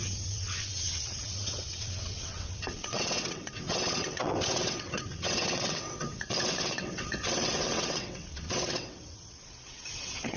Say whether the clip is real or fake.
fake